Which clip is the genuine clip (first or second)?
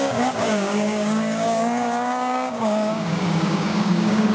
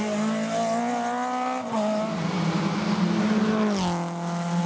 second